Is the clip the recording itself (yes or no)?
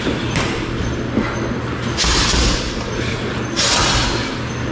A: yes